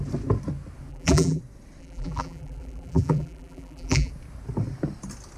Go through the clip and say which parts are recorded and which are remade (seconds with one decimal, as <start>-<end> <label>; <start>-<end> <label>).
0.0-0.9 recorded; 0.9-1.4 remade; 1.4-1.8 recorded; 1.8-4.1 remade; 4.1-5.4 recorded